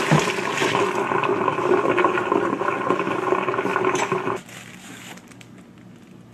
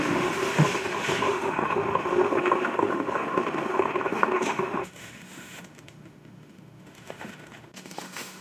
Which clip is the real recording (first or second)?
first